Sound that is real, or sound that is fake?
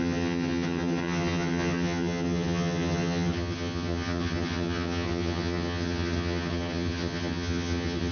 fake